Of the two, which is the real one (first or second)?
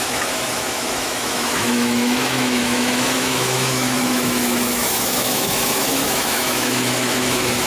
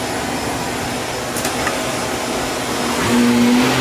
second